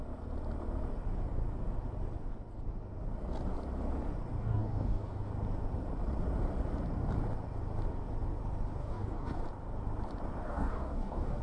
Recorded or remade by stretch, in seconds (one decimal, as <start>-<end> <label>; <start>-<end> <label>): 0.0-4.4 recorded; 4.4-5.3 remade; 5.3-8.8 recorded; 8.8-9.4 remade; 9.4-10.4 recorded; 10.4-11.4 remade